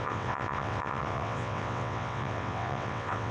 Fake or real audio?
fake